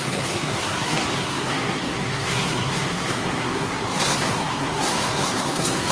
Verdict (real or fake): fake